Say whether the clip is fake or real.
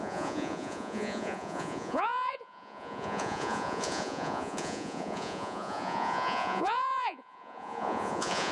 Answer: fake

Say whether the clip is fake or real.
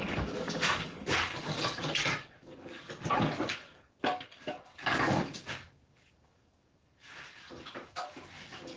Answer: fake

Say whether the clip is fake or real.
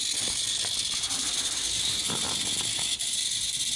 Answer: real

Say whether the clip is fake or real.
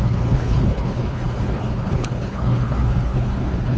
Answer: fake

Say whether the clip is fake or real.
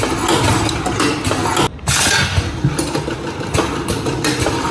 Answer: real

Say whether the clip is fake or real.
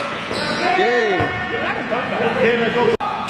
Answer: fake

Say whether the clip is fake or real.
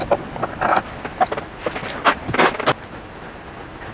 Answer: real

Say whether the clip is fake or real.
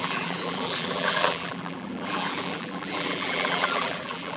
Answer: fake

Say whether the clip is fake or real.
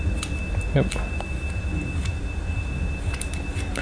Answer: real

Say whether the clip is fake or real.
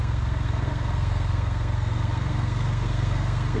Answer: fake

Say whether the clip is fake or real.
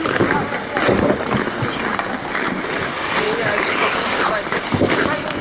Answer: real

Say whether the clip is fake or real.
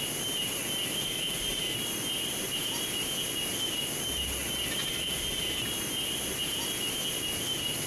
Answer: real